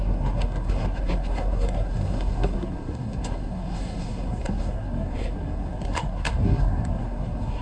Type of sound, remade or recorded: remade